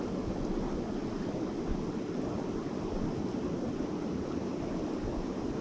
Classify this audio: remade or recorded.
recorded